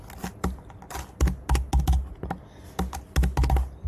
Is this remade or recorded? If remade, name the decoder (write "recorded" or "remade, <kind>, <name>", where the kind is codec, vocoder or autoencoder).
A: recorded